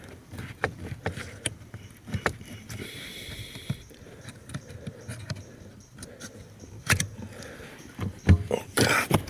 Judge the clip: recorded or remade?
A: remade